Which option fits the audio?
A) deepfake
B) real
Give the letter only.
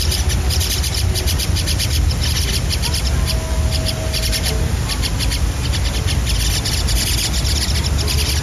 B